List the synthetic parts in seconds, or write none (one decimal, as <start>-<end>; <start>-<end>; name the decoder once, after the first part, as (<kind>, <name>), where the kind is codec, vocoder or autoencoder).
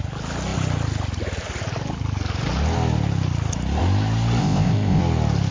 4.4-5.0 (codec, ZipCodec)